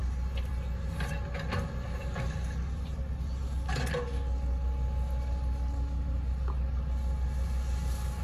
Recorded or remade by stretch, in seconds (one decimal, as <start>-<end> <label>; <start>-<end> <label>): 0.0-8.2 recorded